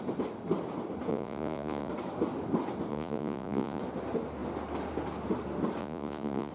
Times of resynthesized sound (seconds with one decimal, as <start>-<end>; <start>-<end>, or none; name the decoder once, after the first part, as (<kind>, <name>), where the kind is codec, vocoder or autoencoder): 1.1-1.9 (vocoder, Vocos); 2.9-3.8; 5.8-6.5

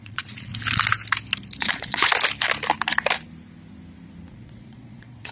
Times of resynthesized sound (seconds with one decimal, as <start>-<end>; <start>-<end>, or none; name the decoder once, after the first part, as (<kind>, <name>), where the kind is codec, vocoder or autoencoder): 0.0-0.5 (vocoder, Vocos); 1.6-2.1; 4.3-5.3